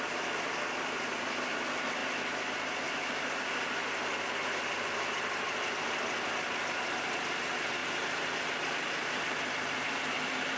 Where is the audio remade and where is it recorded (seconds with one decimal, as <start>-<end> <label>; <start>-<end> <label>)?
0.0-2.0 remade; 2.0-7.0 recorded; 7.0-10.6 remade